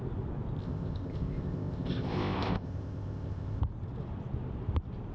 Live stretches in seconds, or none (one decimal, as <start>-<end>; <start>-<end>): 0.0-0.6; 3.6-5.1